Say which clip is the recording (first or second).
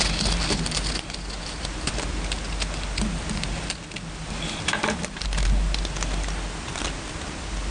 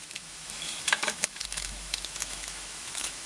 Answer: first